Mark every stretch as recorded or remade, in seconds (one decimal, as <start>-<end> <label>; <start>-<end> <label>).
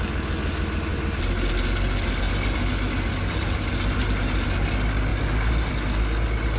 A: 0.0-6.6 recorded